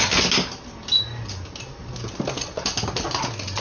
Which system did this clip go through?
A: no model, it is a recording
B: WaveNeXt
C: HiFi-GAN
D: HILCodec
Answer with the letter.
A